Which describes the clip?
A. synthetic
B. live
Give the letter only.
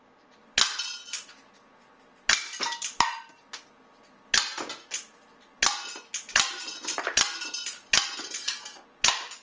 B